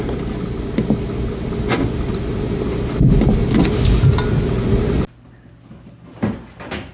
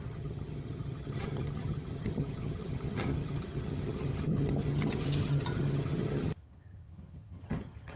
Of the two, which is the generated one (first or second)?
second